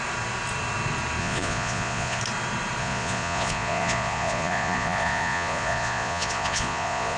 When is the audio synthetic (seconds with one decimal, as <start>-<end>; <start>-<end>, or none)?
1.2-2.2; 2.8-7.2